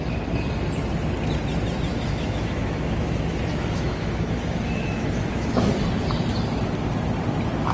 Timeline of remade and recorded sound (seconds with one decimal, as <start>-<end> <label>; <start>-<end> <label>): 0.0-1.9 recorded; 1.9-5.8 remade; 5.8-7.7 recorded